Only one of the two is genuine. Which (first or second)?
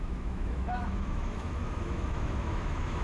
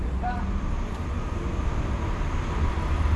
second